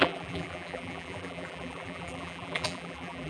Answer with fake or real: fake